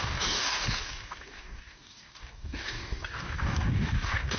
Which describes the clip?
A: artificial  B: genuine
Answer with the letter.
A